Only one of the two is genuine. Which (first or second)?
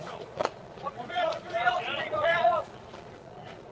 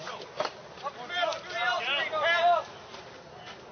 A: second